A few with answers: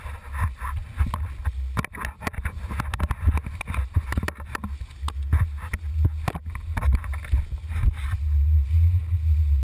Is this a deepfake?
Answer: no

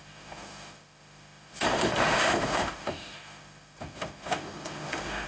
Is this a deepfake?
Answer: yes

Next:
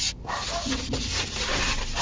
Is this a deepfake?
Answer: no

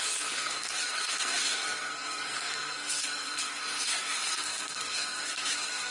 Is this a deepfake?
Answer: yes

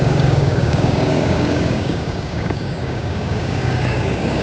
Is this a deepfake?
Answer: yes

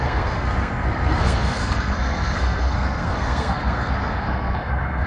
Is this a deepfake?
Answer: yes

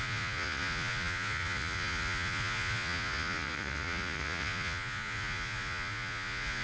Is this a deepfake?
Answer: yes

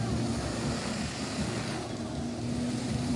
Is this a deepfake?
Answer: no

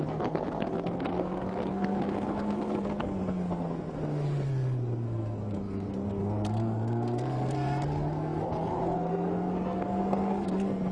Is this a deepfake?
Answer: yes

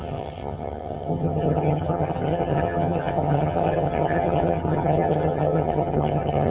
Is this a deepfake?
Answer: yes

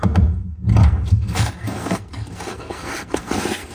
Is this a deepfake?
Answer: yes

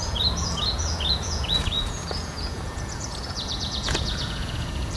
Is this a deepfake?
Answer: yes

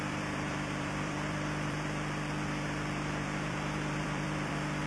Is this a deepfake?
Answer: yes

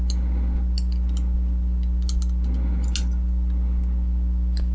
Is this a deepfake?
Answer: no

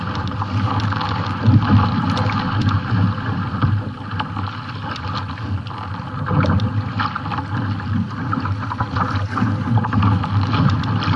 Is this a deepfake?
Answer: no